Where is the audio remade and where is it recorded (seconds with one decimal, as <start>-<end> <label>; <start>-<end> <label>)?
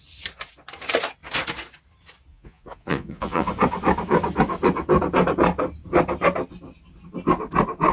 0.0-2.3 recorded; 2.3-3.5 remade; 3.5-7.9 recorded